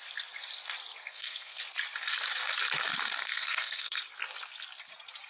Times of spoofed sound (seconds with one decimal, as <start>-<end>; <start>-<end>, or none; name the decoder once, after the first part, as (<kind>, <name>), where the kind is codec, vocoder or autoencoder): 1.0-1.6 (codec, SNAC); 3.2-4.0